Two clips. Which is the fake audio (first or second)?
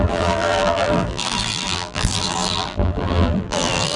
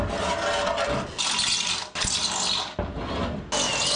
first